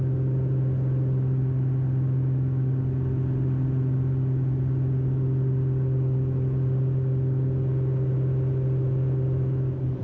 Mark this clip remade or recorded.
recorded